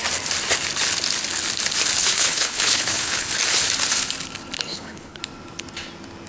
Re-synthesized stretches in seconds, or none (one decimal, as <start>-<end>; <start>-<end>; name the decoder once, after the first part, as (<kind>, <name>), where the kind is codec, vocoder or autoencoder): 2.0-3.3 (codec, HILCodec); 4.7-5.2